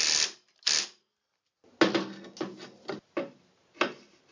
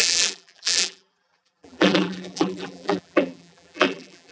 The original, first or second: first